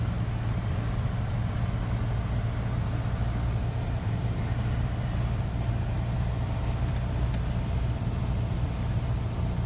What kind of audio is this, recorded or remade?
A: recorded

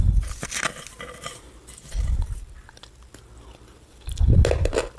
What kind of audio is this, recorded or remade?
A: recorded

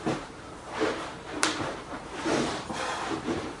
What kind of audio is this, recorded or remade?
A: remade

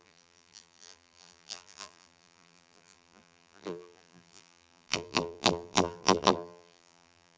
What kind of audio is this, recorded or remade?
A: remade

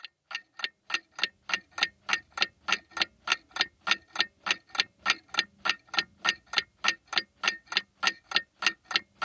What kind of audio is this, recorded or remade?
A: recorded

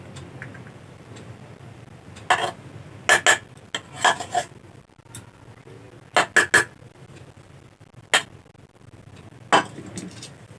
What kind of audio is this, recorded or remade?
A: recorded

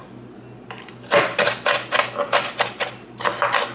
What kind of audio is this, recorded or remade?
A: recorded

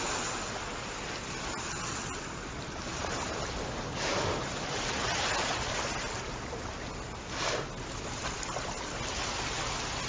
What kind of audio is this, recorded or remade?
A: recorded